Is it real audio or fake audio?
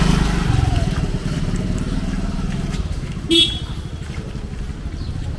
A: fake